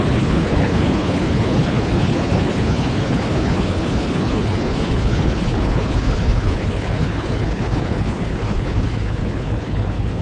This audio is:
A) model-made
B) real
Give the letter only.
A